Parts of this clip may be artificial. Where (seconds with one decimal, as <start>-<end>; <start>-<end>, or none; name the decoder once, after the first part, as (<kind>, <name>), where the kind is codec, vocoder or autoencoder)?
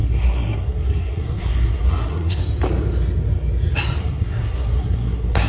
0.0-2.4 (codec, SNAC); 4.0-5.5